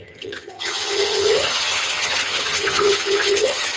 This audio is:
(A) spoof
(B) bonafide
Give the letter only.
A